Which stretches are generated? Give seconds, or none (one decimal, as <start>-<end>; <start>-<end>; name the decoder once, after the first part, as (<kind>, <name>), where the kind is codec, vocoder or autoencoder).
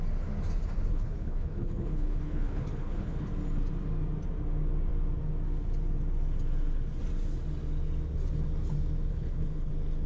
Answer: 0.9-3.3 (codec, HILCodec); 9.1-9.7